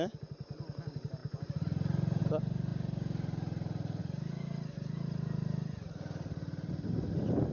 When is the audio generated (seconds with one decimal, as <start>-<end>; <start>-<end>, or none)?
none